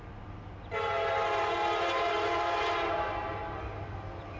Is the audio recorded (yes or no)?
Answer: yes